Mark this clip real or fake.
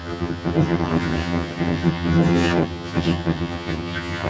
fake